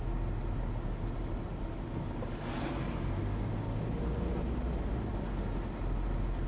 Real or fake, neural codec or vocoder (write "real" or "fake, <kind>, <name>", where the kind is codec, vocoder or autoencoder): real